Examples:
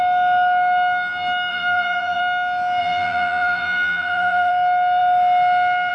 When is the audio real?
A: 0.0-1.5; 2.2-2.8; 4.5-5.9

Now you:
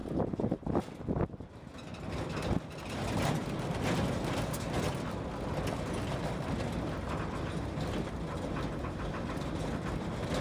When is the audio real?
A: 0.0-10.4

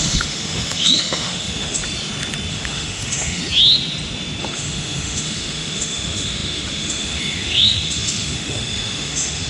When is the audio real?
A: 1.8-2.5; 3.4-4.4

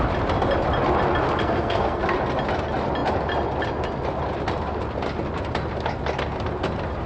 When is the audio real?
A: 0.0-1.4; 2.0-7.1

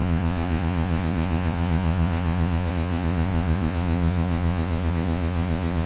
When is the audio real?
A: none